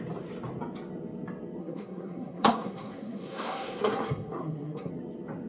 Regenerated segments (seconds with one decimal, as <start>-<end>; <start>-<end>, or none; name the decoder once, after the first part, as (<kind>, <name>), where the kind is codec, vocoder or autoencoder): 1.6-4.9 (codec, SNAC)